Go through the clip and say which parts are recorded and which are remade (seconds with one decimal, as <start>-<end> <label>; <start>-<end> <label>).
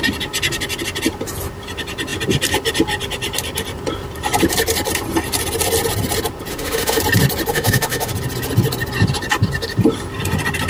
0.0-6.5 recorded; 6.5-7.0 remade; 7.0-7.5 recorded; 7.5-8.1 remade; 8.1-10.7 recorded